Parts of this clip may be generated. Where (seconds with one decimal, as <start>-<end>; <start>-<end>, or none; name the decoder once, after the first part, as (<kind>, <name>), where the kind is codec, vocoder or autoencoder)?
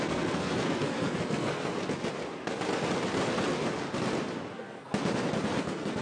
0.0-1.7 (codec, SNAC); 4.5-4.9; 5.6-6.0